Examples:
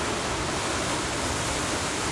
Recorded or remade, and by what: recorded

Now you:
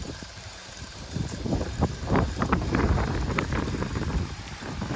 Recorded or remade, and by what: remade, vocoder, BigVGAN v2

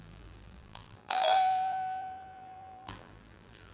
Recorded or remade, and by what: remade, vocoder, BigVGAN v2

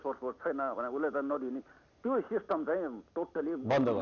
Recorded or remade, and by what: recorded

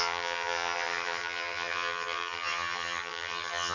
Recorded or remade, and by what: remade, vocoder, HiFi-GAN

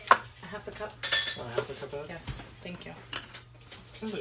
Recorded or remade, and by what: recorded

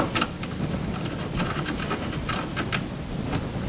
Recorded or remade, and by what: recorded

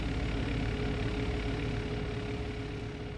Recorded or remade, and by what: recorded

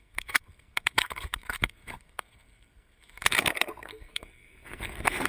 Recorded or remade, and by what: remade, codec, SNAC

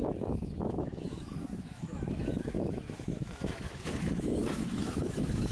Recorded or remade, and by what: remade, autoencoder, DAC-VAE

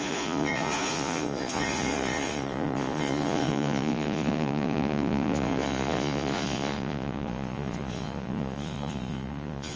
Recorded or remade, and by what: remade, vocoder, Vocos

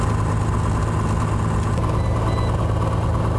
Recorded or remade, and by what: recorded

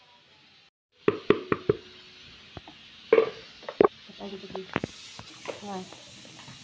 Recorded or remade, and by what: recorded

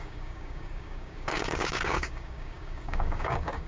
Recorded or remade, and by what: remade, codec, DAC